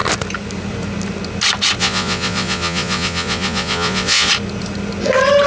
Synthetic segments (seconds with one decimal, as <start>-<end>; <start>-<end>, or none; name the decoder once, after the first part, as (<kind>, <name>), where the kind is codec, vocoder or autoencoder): 1.8-4.3 (vocoder, Vocos)